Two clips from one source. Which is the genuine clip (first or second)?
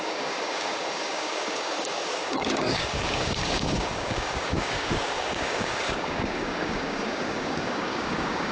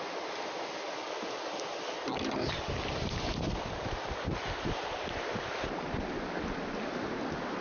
second